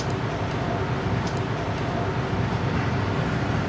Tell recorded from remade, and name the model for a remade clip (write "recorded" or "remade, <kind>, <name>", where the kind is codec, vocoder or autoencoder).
recorded